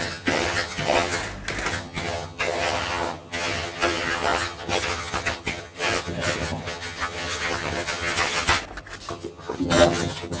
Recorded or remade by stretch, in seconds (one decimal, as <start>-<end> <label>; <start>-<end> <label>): 0.0-1.2 remade; 1.2-1.7 recorded; 1.7-8.6 remade; 8.6-9.1 recorded; 9.1-10.4 remade